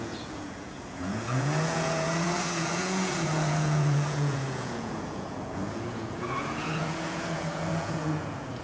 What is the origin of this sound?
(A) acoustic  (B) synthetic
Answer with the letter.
B